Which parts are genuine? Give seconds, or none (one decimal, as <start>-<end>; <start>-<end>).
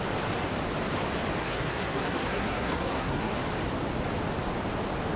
0.0-1.4; 3.4-5.2